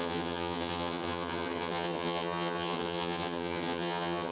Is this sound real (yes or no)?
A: no